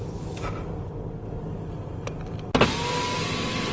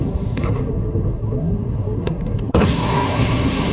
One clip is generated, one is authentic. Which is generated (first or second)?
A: second